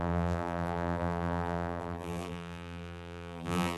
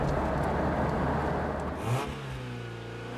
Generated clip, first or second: first